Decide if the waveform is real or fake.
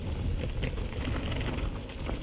real